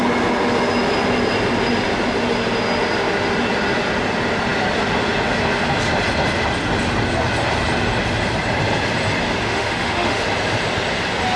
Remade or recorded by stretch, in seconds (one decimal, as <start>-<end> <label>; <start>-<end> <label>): 0.0-9.4 recorded; 9.4-10.2 remade; 10.2-11.4 recorded